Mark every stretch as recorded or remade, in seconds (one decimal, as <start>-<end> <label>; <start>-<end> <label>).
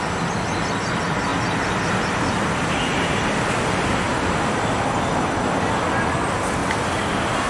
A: 0.0-7.5 recorded